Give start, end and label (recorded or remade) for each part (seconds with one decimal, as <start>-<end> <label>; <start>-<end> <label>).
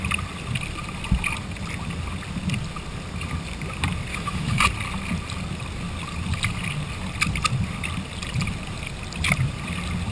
0.0-4.1 recorded; 4.1-4.6 remade; 4.6-10.1 recorded